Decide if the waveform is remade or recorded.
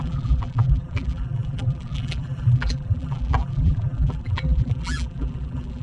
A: remade